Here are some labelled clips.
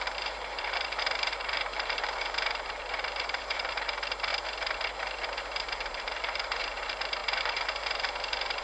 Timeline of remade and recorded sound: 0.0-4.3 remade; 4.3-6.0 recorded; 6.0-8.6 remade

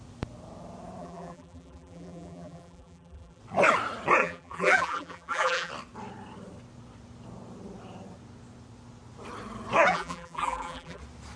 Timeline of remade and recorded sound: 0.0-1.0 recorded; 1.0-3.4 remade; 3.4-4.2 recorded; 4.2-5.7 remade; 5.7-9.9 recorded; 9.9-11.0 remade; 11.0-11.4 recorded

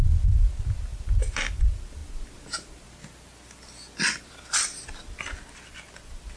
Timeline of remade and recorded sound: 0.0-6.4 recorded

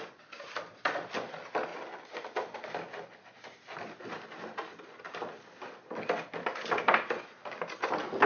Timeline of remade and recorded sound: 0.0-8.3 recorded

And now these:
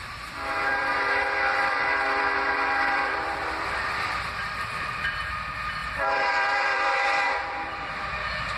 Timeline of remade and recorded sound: 0.0-0.7 recorded; 0.7-5.2 remade; 5.2-5.8 recorded; 5.8-7.9 remade; 7.9-8.6 recorded

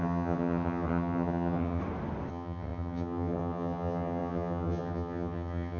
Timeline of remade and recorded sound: 0.0-1.8 remade; 1.8-2.3 recorded; 2.3-5.8 remade

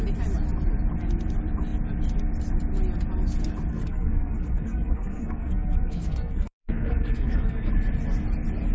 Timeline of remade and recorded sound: 0.0-3.7 recorded; 3.7-7.7 remade; 7.7-8.7 recorded

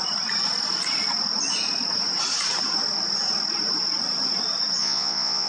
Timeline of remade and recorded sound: 0.0-4.8 recorded; 4.8-5.5 remade